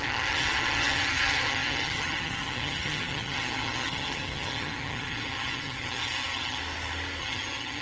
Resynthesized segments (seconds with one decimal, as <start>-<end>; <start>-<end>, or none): 0.0-6.6; 7.2-7.8